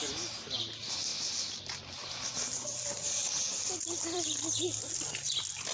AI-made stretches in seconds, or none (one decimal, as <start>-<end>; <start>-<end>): 1.1-2.1; 3.2-5.1